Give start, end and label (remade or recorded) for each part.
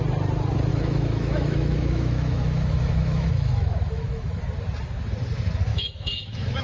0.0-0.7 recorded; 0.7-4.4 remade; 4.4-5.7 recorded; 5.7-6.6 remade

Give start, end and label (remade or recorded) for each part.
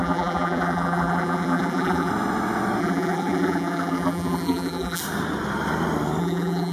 0.0-2.1 remade; 2.1-2.8 recorded; 2.8-5.0 remade; 5.0-6.2 recorded; 6.2-6.7 remade